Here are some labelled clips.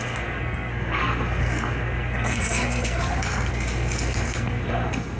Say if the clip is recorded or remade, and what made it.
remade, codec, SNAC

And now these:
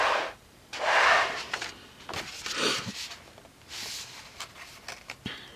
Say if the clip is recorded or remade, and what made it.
recorded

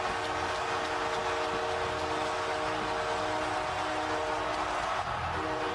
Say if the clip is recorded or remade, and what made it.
recorded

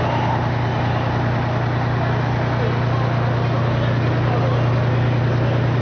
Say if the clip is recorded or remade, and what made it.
recorded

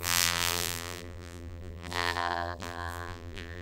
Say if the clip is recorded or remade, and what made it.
remade, vocoder, BigVGAN v2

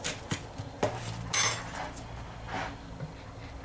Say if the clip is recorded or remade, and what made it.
recorded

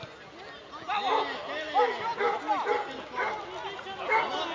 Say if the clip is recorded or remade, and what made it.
recorded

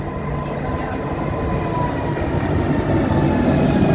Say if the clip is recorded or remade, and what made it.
recorded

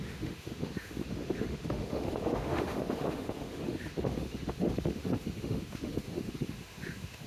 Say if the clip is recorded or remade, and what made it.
remade, autoencoder, DAC-VAE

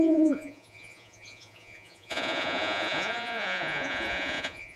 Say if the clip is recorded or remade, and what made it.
remade, vocoder, Vocos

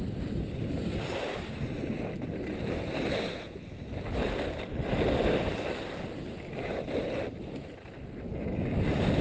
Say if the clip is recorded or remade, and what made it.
recorded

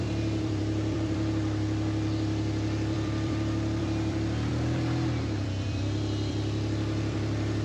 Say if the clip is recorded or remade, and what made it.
remade, vocoder, BigVGAN v2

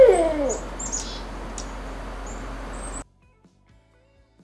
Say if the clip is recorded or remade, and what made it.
recorded